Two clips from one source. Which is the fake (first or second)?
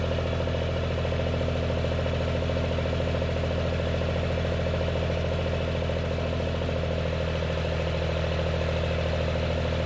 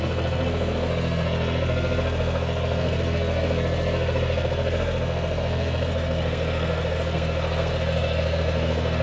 second